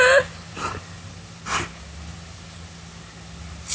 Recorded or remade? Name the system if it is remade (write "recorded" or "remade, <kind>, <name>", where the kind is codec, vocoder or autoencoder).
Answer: recorded